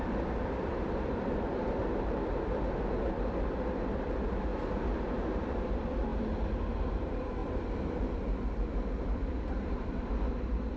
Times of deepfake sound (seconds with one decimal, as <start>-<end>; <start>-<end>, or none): 0.0-1.8; 3.9-4.5; 5.3-6.1; 6.7-10.8